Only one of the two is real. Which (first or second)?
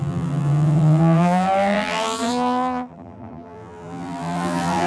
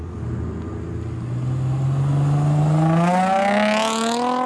second